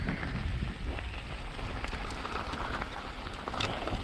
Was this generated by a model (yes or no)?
no